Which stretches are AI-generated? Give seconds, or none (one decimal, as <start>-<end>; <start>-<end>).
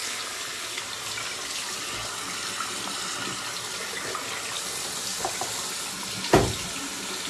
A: 0.0-0.8